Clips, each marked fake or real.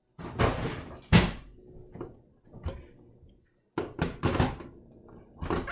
real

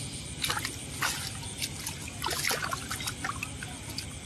real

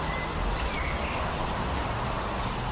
real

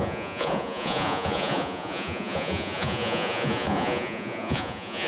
fake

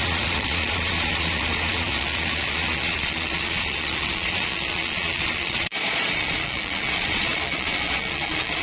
fake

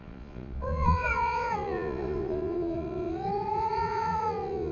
fake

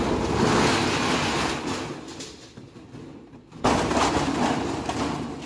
real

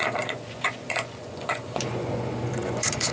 fake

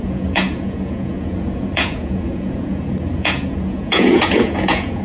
fake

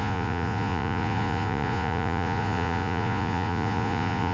fake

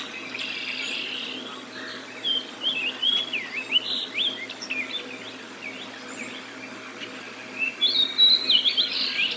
real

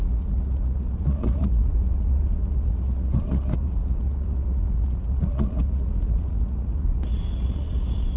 fake